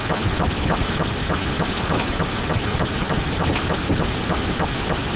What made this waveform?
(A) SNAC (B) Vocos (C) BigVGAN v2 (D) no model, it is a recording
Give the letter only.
D